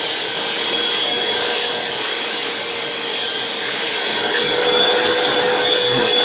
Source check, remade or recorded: remade